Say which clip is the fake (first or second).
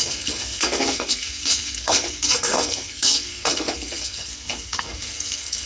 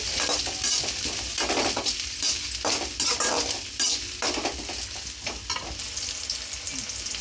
first